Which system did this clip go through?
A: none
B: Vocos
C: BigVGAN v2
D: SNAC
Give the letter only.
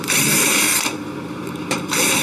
C